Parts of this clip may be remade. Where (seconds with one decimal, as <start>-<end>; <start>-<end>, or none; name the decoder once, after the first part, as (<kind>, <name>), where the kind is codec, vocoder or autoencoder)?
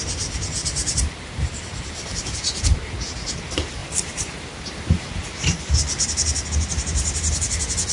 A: 0.6-2.2 (vocoder, BigVGAN v2); 3.8-5.1